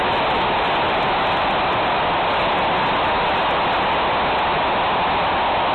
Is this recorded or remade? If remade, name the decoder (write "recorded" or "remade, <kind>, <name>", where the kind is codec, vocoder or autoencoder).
recorded